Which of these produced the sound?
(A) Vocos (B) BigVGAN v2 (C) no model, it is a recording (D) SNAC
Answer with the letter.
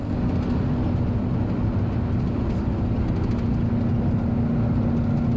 C